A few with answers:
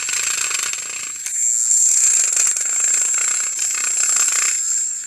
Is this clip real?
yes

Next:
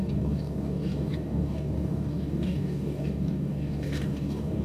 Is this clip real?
no